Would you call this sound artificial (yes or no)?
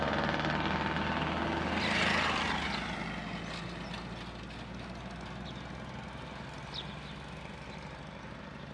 no